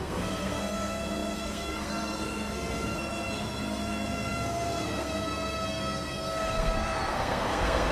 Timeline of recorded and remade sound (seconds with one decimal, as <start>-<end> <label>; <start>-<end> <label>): 0.0-7.9 remade